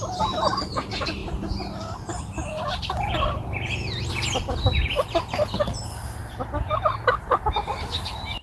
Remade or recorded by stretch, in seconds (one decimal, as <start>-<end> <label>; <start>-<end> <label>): 0.0-8.4 recorded

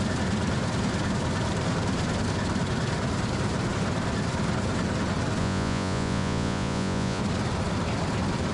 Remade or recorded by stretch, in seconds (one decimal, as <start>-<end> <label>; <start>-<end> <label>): 0.0-5.4 recorded; 5.4-7.2 remade; 7.2-8.5 recorded

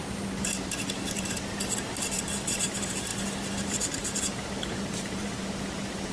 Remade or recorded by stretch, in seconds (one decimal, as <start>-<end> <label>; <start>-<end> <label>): 0.0-3.1 remade; 3.1-3.6 recorded; 3.6-6.1 remade

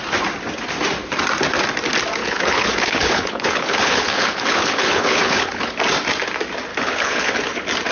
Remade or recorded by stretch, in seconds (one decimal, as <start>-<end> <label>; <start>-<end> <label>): 0.0-2.2 recorded; 2.2-5.7 remade; 5.7-6.7 recorded; 6.7-7.4 remade; 7.4-7.9 recorded